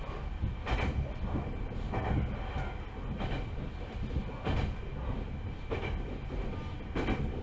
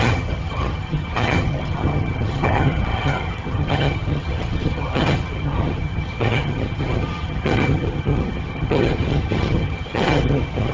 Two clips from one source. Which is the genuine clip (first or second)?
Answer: first